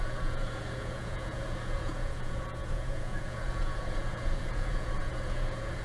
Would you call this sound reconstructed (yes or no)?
yes